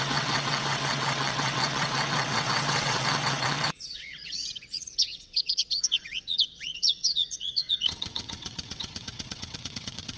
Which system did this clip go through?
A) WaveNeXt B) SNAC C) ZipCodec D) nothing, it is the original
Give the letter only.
A